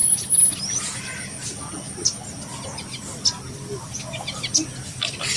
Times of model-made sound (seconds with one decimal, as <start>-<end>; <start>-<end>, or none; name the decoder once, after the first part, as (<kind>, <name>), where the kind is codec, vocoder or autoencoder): none